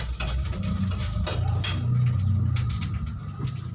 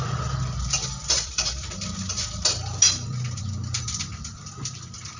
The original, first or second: first